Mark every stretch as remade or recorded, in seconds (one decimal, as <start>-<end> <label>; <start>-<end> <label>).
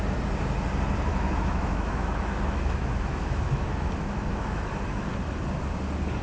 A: 0.0-1.1 recorded; 1.1-4.8 remade; 4.8-6.2 recorded